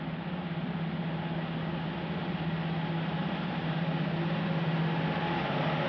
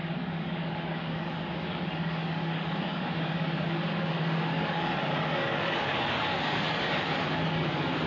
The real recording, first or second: first